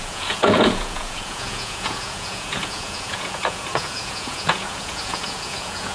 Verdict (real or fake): fake